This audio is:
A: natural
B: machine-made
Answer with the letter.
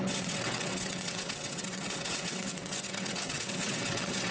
B